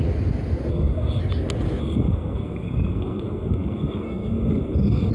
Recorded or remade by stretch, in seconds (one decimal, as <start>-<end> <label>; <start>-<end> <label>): 0.0-0.7 recorded; 0.7-1.2 remade; 1.2-1.8 recorded; 1.8-5.1 remade